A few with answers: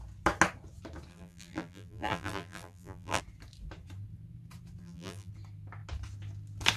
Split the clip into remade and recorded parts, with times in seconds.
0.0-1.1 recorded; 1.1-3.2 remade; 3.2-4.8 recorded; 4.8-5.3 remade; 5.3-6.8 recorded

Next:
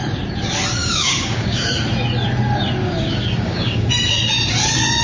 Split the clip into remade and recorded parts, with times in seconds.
0.0-0.8 recorded; 0.8-1.7 remade; 1.7-2.8 recorded; 2.8-3.9 remade; 3.9-5.0 recorded

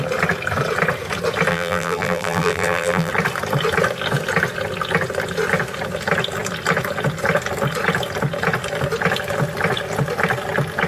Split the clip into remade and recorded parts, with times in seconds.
0.0-1.5 recorded; 1.5-3.1 remade; 3.1-10.9 recorded

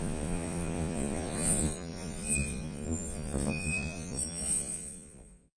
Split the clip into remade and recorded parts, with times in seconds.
0.0-5.6 remade

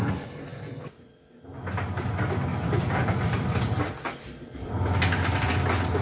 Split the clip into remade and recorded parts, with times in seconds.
0.0-0.5 recorded; 0.5-1.1 remade; 1.1-2.5 recorded; 2.5-5.5 remade; 5.5-6.0 recorded

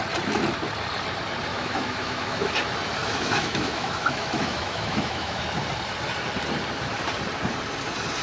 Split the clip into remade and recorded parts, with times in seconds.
0.0-1.5 recorded; 1.5-2.5 remade; 2.5-3.0 recorded; 3.0-5.4 remade; 5.4-8.2 recorded